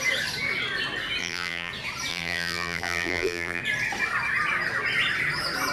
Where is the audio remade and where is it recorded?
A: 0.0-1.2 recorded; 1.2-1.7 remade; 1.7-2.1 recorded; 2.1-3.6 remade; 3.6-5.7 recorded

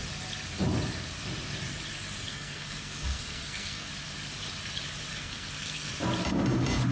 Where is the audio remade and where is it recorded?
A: 0.0-2.3 recorded; 2.3-3.9 remade; 3.9-5.1 recorded; 5.1-5.9 remade; 5.9-6.9 recorded